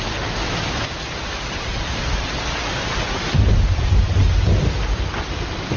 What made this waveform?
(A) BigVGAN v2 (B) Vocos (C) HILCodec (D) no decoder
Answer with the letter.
D